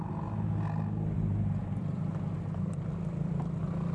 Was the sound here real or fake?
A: real